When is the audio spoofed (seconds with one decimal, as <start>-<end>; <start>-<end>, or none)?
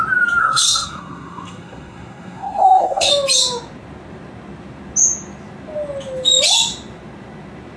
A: 0.4-3.1